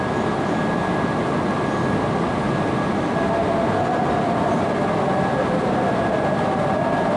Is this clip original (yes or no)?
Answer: yes